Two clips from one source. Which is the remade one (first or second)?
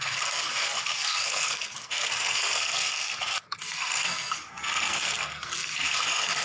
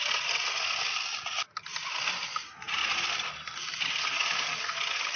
first